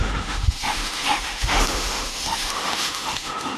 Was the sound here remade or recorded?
remade